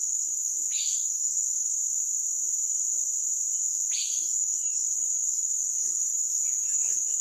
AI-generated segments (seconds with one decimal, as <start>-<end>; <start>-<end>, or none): 0.0-1.8; 3.8-7.2

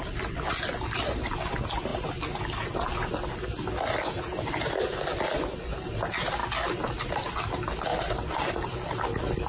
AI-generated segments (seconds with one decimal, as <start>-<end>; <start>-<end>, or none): 7.9-8.5

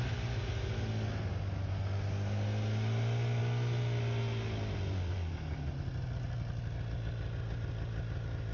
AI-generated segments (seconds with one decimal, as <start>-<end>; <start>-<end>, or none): none

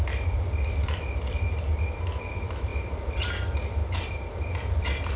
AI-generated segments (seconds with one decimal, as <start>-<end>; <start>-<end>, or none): none

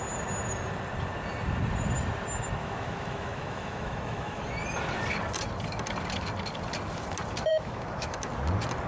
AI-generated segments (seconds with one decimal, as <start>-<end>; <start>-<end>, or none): 2.6-4.4; 7.5-8.3

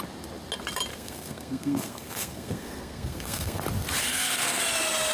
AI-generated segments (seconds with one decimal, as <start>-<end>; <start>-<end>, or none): 0.9-3.6; 4.0-4.6

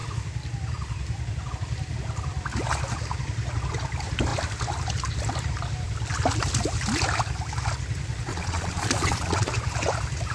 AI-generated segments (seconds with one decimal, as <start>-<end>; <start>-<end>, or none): 8.3-9.5